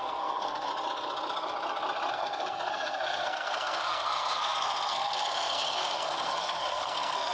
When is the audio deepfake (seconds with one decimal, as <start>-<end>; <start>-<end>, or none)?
0.0-0.7; 2.1-7.3